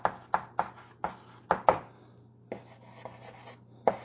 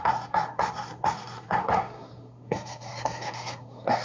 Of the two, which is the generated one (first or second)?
second